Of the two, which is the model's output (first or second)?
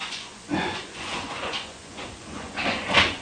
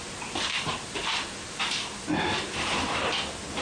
first